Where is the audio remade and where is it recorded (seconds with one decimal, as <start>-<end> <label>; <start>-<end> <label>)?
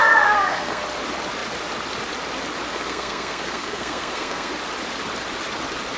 0.0-0.8 remade; 0.8-2.7 recorded; 2.7-4.5 remade; 4.5-6.0 recorded